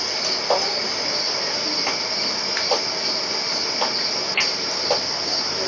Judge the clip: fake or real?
real